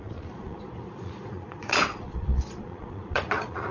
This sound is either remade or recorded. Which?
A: remade